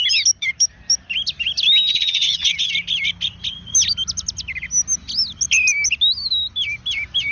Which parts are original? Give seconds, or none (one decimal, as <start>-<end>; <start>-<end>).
0.0-1.9; 2.7-7.3